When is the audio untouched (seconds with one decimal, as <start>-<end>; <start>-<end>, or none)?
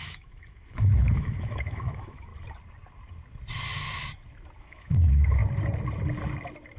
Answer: 2.3-4.6; 5.4-6.8